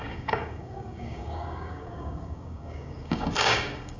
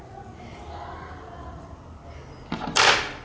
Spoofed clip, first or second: first